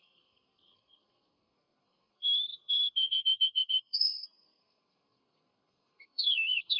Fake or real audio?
fake